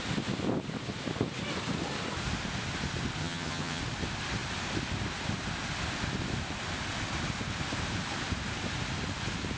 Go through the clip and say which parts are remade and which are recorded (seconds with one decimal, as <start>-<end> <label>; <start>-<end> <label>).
0.0-3.2 recorded; 3.2-3.8 remade; 3.8-9.6 recorded